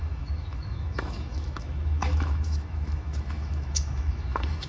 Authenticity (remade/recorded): remade